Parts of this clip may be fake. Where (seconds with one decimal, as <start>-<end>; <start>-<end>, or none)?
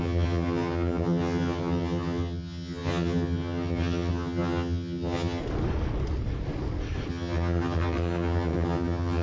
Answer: 0.0-5.4; 7.1-9.2